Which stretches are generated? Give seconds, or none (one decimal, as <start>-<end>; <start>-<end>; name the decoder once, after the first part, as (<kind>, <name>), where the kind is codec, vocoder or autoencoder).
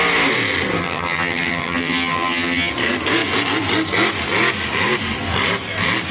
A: 0.8-2.7 (vocoder, HiFi-GAN)